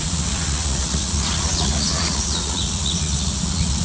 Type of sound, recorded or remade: remade